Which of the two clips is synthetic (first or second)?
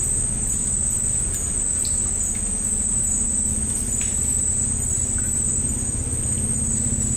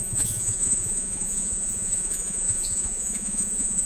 second